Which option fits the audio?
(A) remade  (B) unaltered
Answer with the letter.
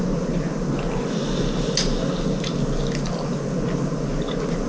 B